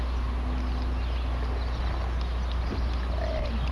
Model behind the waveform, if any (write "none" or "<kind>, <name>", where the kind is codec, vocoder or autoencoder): none